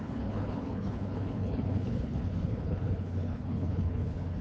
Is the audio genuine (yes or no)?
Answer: no